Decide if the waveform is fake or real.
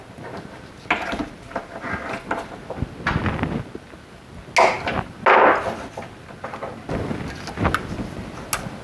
real